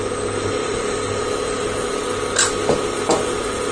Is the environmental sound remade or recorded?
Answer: recorded